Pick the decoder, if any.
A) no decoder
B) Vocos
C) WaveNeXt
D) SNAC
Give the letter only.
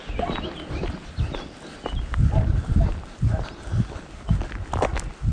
A